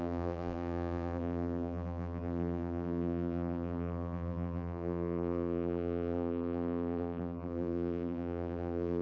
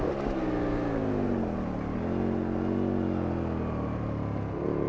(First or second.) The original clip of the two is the second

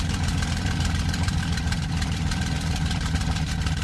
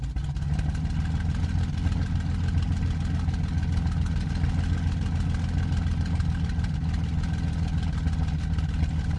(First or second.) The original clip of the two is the second